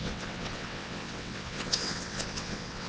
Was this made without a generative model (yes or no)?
no